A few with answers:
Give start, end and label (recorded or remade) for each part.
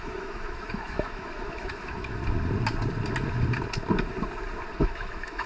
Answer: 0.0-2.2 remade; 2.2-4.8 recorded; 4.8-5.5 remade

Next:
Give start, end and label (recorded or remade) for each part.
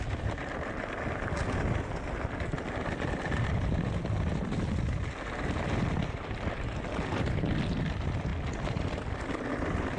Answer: 0.0-10.0 recorded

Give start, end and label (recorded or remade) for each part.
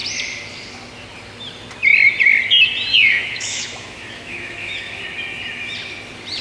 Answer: 0.0-2.9 recorded; 2.9-5.0 remade; 5.0-6.4 recorded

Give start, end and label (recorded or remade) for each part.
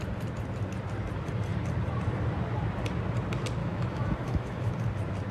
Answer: 0.0-3.6 recorded; 3.6-4.7 remade; 4.7-5.3 recorded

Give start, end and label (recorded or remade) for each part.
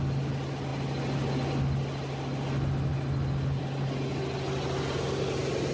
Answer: 0.0-5.7 recorded